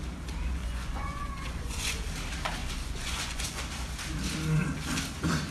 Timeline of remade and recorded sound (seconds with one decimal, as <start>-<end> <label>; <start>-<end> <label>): 0.0-0.6 recorded; 0.6-2.0 remade; 2.0-2.6 recorded; 2.6-3.6 remade; 3.6-5.5 recorded